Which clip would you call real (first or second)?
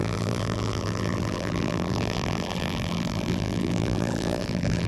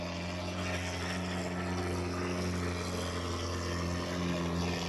second